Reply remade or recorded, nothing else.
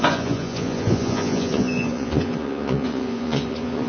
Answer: remade